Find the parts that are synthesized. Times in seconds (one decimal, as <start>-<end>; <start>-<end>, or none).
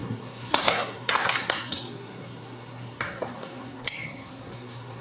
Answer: 0.0-5.0